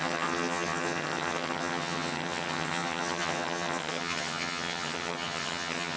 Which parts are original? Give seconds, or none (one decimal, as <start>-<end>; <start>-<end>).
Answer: none